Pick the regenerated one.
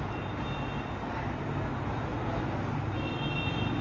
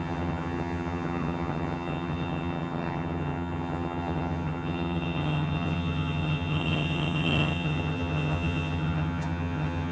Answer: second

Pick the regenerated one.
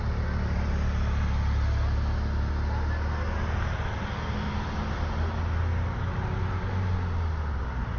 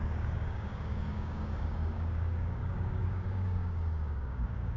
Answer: second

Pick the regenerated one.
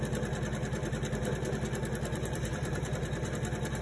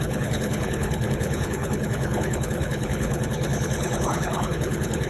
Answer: second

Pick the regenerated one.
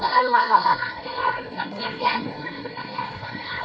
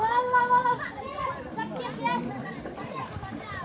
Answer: first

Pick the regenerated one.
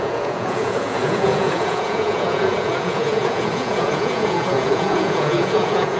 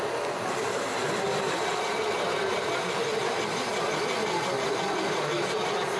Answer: first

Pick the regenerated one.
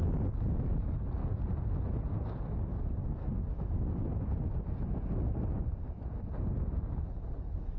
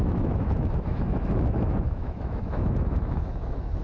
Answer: second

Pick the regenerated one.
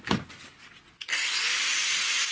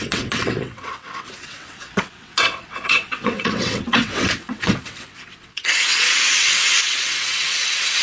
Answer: second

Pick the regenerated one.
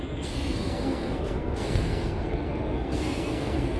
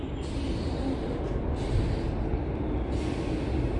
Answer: first